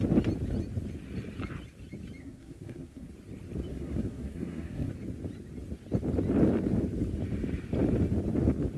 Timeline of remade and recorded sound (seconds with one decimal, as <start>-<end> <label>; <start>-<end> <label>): 0.0-2.2 recorded; 2.2-3.1 remade; 3.1-3.7 recorded; 3.7-4.9 remade; 4.9-8.8 recorded